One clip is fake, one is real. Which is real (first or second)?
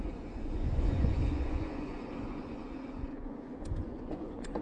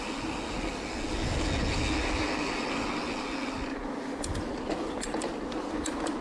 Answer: second